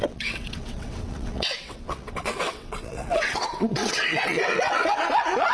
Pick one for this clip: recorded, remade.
remade